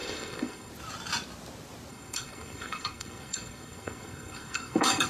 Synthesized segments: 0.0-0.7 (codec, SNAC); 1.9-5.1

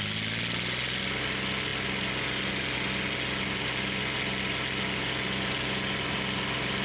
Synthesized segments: none

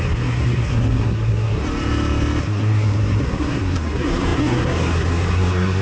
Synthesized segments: 0.0-1.6 (codec, SNAC); 2.4-5.8

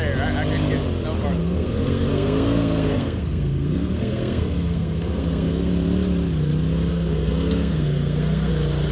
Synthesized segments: 1.4-5.7 (codec, SNAC); 6.9-8.5

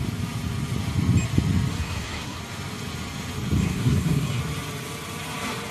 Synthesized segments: 1.7-2.4 (codec, SNAC); 3.6-4.4